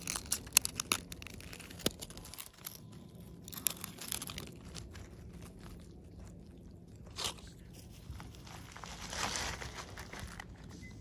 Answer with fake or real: real